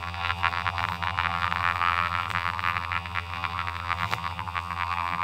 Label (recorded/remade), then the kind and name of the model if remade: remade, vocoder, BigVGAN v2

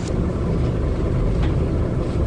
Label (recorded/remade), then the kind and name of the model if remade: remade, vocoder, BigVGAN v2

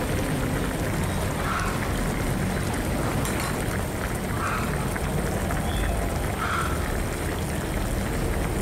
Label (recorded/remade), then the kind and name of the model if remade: recorded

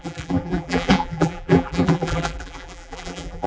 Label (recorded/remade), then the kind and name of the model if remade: remade, vocoder, BigVGAN v2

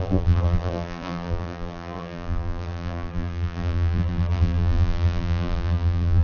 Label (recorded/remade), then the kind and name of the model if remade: remade, vocoder, BigVGAN v2